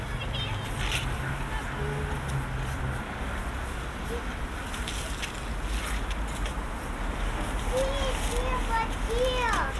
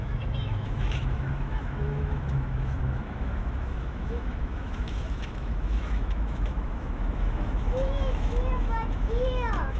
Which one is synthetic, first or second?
second